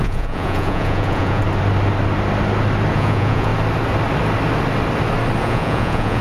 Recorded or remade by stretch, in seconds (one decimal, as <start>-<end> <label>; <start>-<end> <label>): 0.0-1.4 remade; 1.4-2.9 recorded; 2.9-3.5 remade; 3.5-5.4 recorded; 5.4-6.2 remade